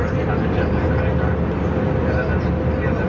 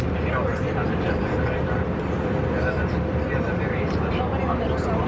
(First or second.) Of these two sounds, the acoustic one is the first